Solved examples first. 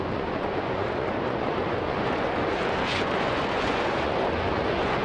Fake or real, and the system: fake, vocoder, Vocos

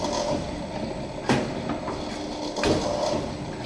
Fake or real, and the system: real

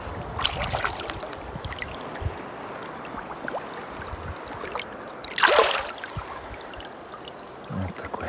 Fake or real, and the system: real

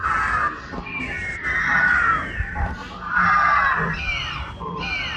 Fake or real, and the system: real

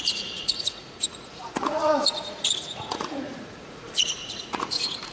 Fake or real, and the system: fake, vocoder, Vocos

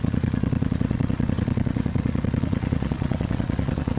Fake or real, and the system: fake, vocoder, Vocos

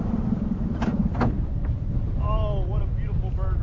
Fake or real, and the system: real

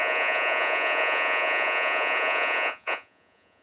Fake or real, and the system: fake, vocoder, Vocos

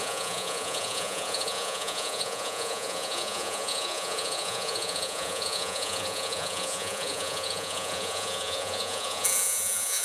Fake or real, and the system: fake, vocoder, Vocos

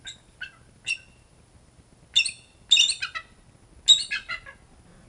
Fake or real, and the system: real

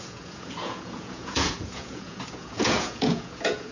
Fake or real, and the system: fake, vocoder, Vocos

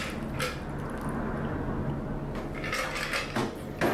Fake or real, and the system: real